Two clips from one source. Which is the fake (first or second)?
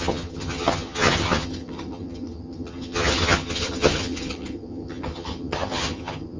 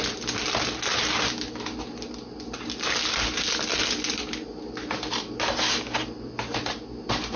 first